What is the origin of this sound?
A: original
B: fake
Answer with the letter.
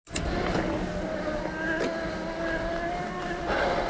A